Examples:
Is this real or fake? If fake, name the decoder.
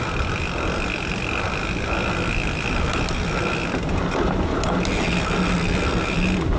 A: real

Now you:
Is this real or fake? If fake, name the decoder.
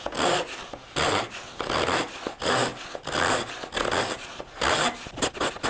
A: real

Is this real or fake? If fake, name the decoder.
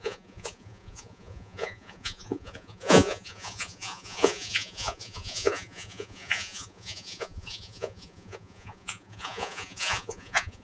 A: fake, vocoder, Vocos